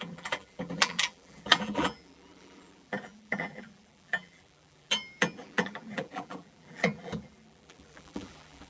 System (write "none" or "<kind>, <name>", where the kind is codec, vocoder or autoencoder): vocoder, BigVGAN v2